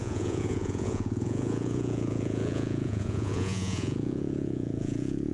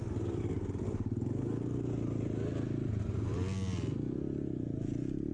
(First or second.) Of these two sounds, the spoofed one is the first